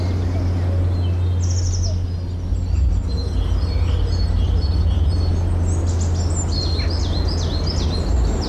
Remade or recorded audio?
recorded